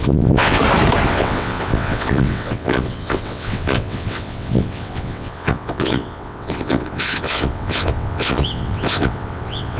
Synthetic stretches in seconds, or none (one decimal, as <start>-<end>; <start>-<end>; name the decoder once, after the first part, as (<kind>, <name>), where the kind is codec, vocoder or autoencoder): 0.0-0.6 (vocoder, WaveNeXt); 1.1-9.8